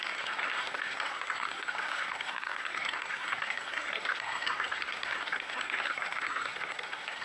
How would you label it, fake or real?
fake